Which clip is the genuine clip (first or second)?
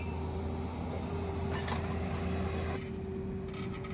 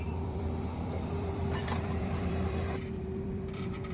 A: first